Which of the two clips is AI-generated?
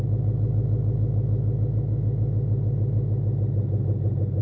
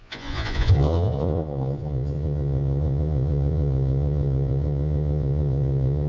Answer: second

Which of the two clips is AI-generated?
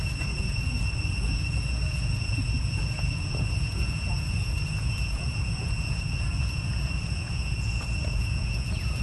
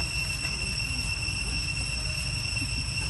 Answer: first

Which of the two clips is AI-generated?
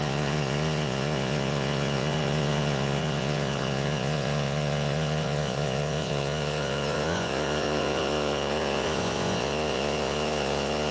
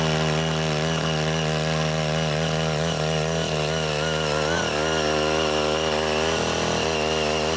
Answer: first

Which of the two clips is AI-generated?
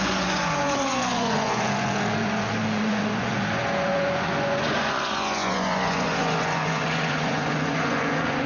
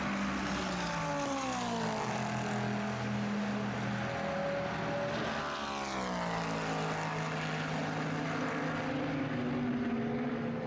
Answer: first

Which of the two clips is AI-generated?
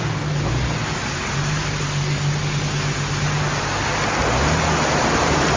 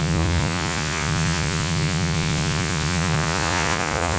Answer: second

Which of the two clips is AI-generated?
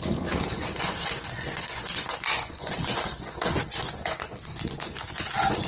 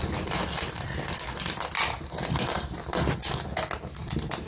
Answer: first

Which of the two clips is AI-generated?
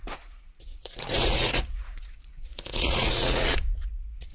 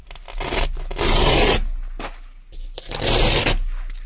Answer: first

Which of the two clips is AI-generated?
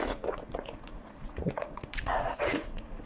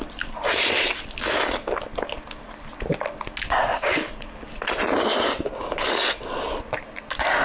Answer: first